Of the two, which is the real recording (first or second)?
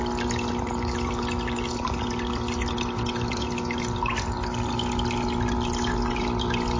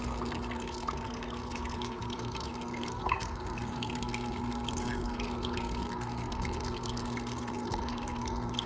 first